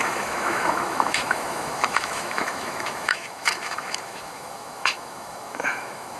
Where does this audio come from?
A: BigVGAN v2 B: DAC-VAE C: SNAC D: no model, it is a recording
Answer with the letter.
B